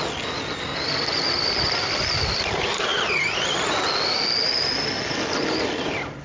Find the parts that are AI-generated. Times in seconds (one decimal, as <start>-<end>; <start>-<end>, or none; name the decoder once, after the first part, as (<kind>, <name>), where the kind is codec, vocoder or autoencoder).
none